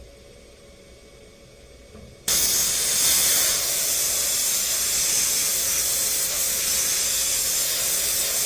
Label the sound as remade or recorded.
recorded